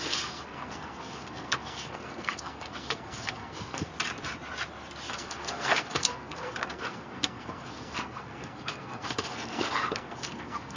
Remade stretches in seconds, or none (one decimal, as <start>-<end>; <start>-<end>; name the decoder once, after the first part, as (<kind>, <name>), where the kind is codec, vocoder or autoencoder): 0.0-3.9 (codec, SNAC); 5.1-10.8